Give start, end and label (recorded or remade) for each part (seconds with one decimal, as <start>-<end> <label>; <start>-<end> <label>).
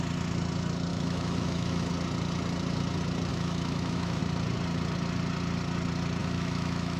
0.0-0.9 recorded; 0.9-1.9 remade; 1.9-3.3 recorded; 3.3-4.2 remade; 4.2-6.2 recorded; 6.2-7.0 remade